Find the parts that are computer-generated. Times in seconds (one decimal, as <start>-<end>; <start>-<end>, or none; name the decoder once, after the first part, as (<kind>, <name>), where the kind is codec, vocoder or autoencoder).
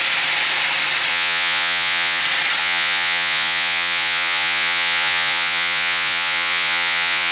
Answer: 1.1-2.2 (vocoder, Vocos); 2.6-7.3